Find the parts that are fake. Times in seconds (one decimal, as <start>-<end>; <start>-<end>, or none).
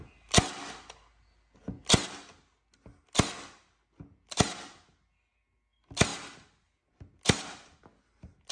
none